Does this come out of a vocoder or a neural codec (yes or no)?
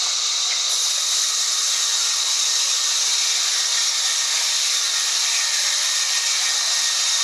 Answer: no